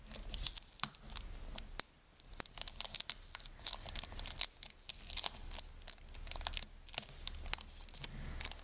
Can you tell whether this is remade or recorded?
recorded